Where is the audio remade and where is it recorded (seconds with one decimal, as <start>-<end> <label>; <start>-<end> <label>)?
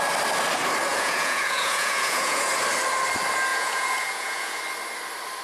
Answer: 0.0-0.9 recorded; 0.9-2.5 remade; 2.5-3.5 recorded; 3.5-4.6 remade; 4.6-5.4 recorded